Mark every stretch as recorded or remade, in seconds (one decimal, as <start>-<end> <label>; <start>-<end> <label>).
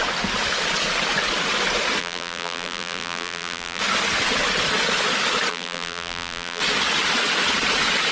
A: 0.0-2.0 recorded; 2.0-3.8 remade; 3.8-5.5 recorded; 5.5-6.6 remade; 6.6-8.1 recorded